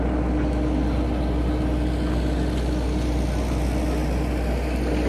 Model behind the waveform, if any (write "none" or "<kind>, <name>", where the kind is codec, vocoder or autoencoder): none